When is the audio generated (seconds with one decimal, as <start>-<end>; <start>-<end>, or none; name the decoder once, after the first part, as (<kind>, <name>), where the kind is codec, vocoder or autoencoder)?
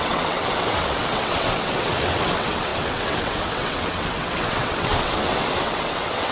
0.0-6.3 (vocoder, WaveNeXt)